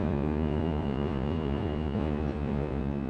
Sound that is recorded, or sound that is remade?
remade